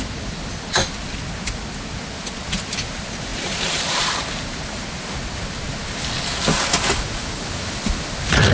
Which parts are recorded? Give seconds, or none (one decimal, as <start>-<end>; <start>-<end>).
0.0-3.3; 4.2-8.5